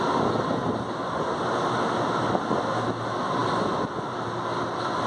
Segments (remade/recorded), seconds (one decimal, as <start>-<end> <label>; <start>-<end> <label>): 0.0-5.1 recorded